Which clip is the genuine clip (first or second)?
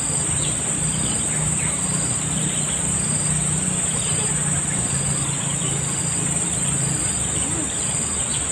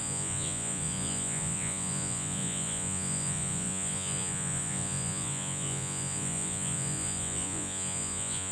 first